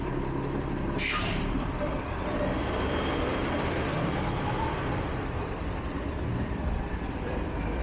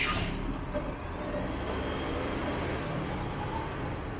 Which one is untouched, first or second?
second